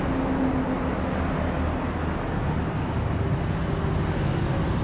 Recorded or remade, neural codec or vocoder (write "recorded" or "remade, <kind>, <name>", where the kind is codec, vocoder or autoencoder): recorded